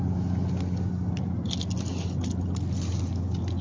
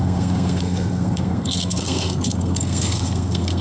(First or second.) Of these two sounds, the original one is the first